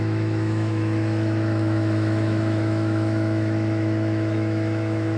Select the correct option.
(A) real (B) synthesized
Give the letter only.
B